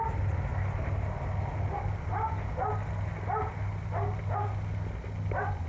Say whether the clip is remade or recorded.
recorded